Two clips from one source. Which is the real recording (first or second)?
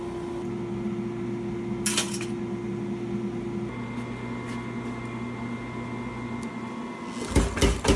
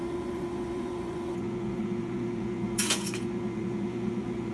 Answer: first